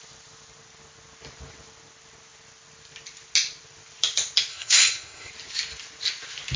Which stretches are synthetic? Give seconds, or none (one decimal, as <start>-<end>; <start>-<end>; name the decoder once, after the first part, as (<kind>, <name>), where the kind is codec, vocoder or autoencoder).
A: 4.5-5.3 (codec, SNAC)